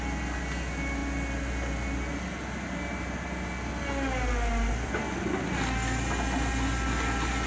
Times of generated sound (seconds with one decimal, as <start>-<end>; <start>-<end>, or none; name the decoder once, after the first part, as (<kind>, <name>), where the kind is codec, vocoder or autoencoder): none

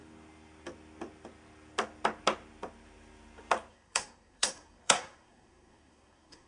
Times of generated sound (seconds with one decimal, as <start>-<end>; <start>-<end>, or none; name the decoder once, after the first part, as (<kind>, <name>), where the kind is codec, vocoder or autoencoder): 3.7-6.5 (codec, SNAC)

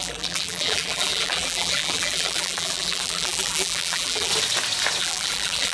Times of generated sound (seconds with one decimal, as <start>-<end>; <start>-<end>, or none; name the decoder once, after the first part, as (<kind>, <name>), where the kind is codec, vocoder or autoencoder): 0.0-4.3 (vocoder, BigVGAN v2); 5.0-5.7

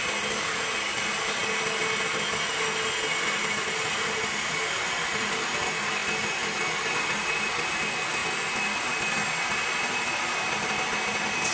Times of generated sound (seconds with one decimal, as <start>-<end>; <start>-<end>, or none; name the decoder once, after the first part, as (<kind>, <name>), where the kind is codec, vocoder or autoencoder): none

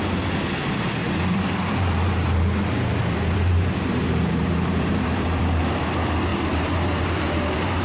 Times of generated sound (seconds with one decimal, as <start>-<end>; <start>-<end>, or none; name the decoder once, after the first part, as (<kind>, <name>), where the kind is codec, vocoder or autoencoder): 1.0-5.6 (vocoder, BigVGAN v2); 6.3-7.8

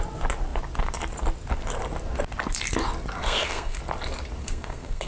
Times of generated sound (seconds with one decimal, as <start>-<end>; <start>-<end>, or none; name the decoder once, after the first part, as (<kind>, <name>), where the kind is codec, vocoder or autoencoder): 3.2-3.8 (codec, SNAC); 4.4-5.1

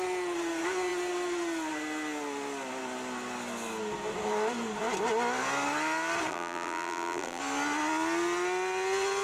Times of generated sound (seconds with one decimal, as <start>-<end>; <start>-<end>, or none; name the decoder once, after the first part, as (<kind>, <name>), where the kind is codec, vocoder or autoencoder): 6.3-7.4 (vocoder, BigVGAN v2)

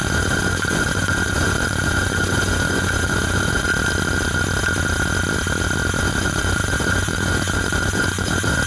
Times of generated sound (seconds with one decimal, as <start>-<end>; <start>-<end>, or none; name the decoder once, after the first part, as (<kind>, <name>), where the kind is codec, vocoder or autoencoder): 0.0-3.7 (vocoder, Vocos); 6.0-8.7